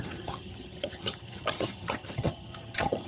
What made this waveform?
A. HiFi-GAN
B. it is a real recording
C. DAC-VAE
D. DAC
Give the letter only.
A